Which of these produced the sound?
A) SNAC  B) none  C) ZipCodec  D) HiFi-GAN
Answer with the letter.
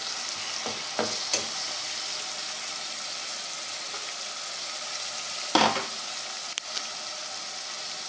B